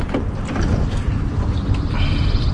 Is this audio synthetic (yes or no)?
no